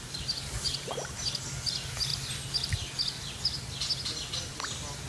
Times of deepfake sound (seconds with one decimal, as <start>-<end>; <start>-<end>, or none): none